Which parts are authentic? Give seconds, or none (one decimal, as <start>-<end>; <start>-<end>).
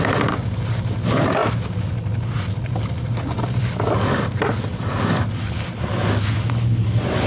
0.0-1.4; 5.8-7.3